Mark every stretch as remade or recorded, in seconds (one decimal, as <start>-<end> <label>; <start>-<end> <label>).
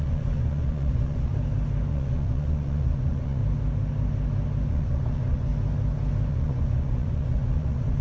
0.0-1.3 remade; 1.3-1.9 recorded; 1.9-3.4 remade; 3.4-4.7 recorded; 4.7-5.5 remade; 5.5-6.3 recorded; 6.3-8.0 remade